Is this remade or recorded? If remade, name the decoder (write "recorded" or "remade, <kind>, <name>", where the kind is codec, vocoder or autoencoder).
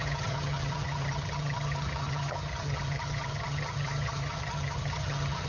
remade, vocoder, HiFi-GAN